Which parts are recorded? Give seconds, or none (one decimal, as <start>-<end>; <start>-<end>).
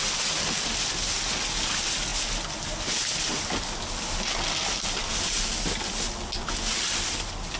0.0-7.6